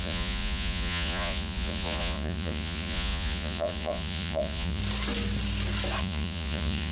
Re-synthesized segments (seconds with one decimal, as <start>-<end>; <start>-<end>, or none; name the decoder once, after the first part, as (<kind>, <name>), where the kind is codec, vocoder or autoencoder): 0.0-4.8 (vocoder, Vocos); 6.0-6.9